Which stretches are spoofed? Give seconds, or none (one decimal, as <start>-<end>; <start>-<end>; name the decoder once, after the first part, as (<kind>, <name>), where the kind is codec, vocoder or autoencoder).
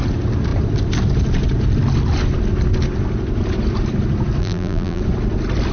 4.4-5.0 (vocoder, BigVGAN v2)